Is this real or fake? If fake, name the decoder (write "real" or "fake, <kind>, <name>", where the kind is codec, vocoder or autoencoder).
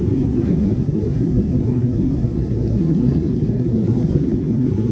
fake, codec, SNAC